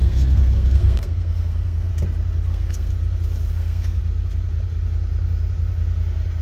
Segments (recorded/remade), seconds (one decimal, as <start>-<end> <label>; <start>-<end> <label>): 0.0-1.9 remade; 1.9-2.5 recorded; 2.5-2.9 remade; 2.9-3.5 recorded; 3.5-4.0 remade; 4.0-6.4 recorded